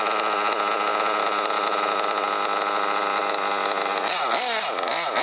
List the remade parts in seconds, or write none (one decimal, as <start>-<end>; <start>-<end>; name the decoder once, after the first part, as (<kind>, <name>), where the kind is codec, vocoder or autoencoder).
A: none